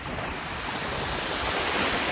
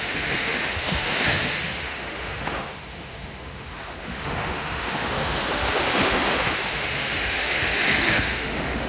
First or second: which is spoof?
second